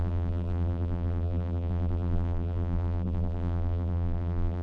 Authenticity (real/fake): fake